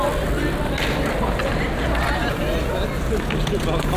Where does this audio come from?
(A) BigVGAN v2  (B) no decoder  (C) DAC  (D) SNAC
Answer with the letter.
B